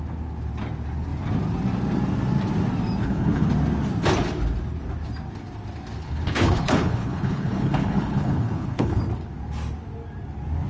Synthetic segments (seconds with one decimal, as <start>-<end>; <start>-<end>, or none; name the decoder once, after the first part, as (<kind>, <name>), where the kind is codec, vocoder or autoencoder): 3.0-3.5 (codec, HILCodec); 6.0-9.0